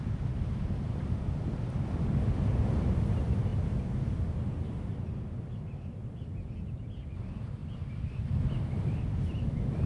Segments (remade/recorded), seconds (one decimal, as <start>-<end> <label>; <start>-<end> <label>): 0.0-9.9 recorded